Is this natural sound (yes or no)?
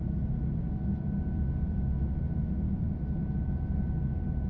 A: yes